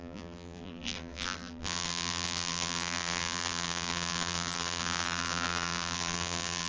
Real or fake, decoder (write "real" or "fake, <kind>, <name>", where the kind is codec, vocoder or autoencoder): fake, vocoder, BigVGAN v2